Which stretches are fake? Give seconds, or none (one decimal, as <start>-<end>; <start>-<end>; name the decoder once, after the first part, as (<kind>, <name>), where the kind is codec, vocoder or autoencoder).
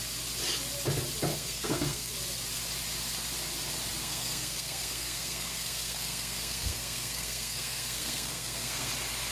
1.3-2.1 (codec, SNAC); 4.0-8.9